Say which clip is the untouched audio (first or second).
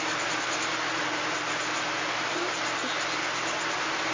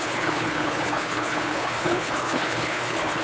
first